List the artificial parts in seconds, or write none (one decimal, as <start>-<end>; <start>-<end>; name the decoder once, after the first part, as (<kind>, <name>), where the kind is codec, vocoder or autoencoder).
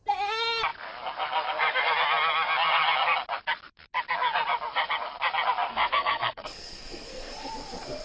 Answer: 5.7-7.5 (codec, SNAC)